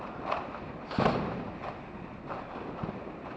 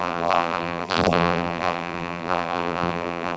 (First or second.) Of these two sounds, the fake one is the second